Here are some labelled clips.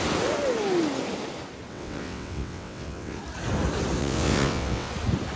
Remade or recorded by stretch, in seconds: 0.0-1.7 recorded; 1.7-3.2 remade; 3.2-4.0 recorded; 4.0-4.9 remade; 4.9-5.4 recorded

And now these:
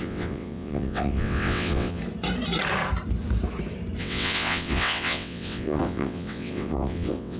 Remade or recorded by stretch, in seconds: 0.0-2.0 remade; 2.0-4.0 recorded; 4.0-7.4 remade

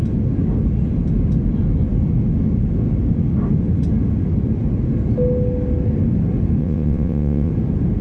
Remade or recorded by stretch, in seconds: 0.0-6.6 recorded; 6.6-7.5 remade; 7.5-8.0 recorded

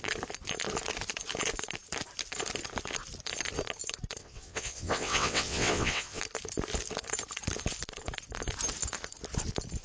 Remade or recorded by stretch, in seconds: 0.0-4.2 recorded; 4.2-6.2 remade; 6.2-9.8 recorded